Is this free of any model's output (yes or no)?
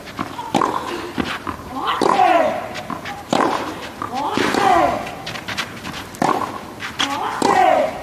yes